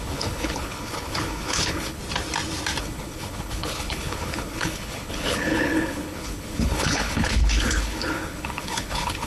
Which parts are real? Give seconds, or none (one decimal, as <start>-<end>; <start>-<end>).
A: 2.0-2.8